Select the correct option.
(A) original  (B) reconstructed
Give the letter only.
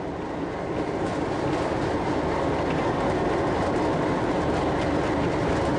A